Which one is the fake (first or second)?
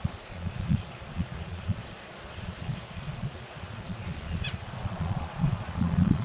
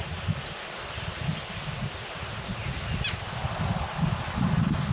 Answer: first